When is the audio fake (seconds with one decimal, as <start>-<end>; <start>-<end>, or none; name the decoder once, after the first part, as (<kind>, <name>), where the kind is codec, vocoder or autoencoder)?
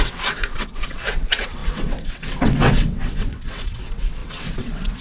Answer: 0.0-5.0 (vocoder, WaveNeXt)